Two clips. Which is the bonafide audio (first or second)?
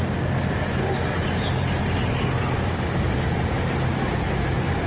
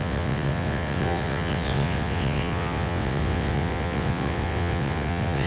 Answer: first